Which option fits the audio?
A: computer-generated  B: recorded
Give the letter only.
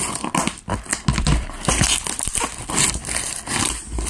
B